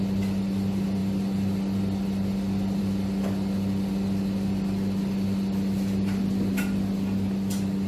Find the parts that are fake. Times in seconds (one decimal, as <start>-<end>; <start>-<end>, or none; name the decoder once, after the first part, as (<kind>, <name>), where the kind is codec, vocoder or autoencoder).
none

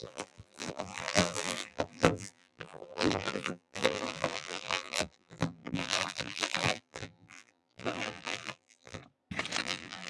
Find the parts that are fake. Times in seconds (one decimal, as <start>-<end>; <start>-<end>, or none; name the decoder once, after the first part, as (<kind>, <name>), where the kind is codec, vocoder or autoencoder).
0.0-9.0 (vocoder, BigVGAN v2); 9.6-10.1

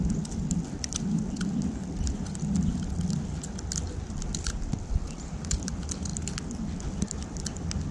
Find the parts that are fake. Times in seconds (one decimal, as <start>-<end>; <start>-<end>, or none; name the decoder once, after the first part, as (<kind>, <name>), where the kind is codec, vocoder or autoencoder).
none

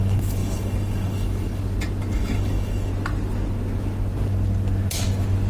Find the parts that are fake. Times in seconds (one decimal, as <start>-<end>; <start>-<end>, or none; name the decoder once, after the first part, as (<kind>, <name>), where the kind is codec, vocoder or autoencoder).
0.0-1.6 (codec, DAC); 2.1-2.9

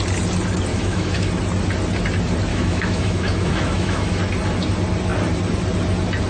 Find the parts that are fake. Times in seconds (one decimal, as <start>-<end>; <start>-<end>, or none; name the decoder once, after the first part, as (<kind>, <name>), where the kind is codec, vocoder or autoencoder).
0.7-1.3 (autoencoder, DAC-VAE); 2.5-4.2